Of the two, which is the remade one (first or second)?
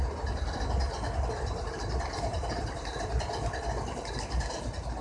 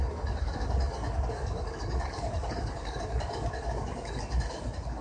second